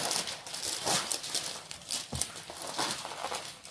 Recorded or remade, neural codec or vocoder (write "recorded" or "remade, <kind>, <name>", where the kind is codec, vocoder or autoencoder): recorded